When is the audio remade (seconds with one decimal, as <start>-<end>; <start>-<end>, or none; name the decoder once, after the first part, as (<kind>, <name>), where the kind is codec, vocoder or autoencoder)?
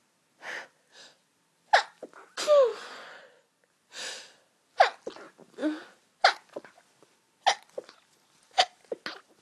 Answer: 2.7-3.7 (vocoder, Vocos)